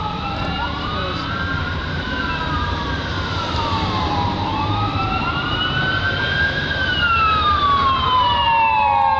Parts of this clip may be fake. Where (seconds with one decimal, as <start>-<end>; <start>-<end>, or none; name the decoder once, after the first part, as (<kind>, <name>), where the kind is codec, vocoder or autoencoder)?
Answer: 0.0-9.2 (vocoder, BigVGAN v2)